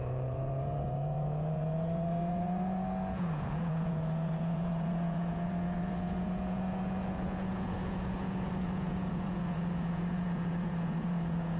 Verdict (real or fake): fake